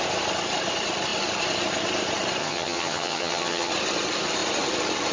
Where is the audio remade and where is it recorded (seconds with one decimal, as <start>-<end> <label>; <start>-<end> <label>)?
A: 0.0-2.4 recorded; 2.4-3.7 remade; 3.7-5.1 recorded